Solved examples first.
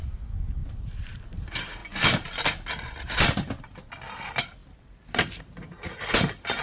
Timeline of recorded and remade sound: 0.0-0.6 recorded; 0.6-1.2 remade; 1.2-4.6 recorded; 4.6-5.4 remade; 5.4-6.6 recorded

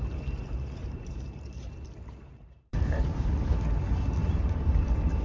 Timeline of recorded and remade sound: 0.0-0.8 recorded; 0.8-3.3 remade; 3.3-4.2 recorded; 4.2-5.2 remade